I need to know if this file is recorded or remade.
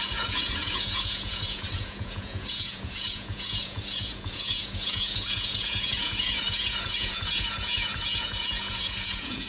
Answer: remade